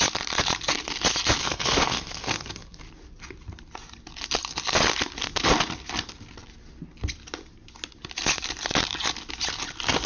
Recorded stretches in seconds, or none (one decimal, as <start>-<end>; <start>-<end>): 0.0-1.4; 2.8-10.1